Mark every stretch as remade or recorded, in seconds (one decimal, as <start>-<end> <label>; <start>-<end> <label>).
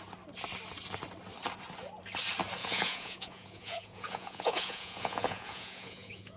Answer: 0.0-2.6 recorded; 2.6-6.4 remade